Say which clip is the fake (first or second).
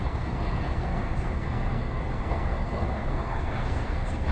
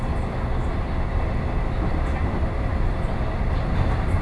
first